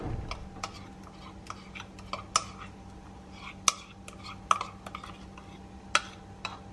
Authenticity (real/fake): real